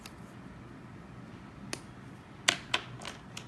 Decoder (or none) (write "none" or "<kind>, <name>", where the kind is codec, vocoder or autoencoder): none